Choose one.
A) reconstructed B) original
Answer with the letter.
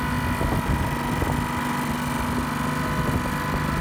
B